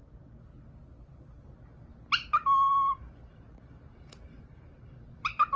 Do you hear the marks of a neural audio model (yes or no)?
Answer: no